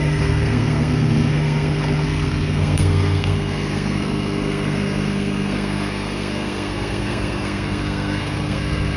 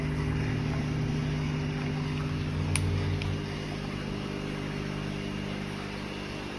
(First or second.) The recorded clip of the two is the second